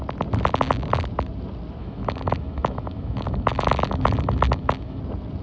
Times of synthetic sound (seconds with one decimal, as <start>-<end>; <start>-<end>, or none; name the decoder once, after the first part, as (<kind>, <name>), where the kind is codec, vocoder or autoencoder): 1.8-5.0 (autoencoder, DAC-VAE)